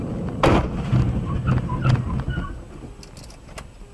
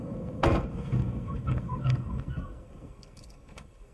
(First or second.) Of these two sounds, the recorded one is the first